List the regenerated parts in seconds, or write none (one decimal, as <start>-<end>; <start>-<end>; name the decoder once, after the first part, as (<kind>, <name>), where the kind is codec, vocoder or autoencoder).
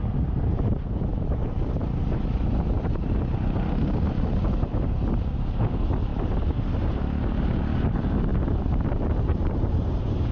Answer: 1.1-3.2 (vocoder, BigVGAN v2); 6.1-7.0; 8.3-10.3